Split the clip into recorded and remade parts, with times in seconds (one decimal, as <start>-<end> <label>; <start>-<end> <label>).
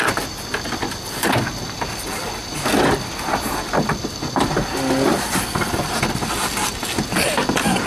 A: 0.0-2.4 recorded; 2.4-3.5 remade; 3.5-7.9 recorded